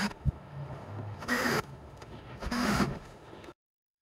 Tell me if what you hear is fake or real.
fake